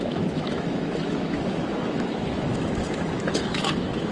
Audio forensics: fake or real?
fake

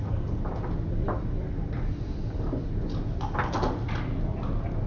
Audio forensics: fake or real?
real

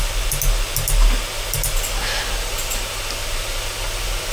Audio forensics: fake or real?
real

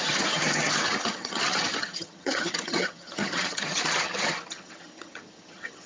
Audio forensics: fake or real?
fake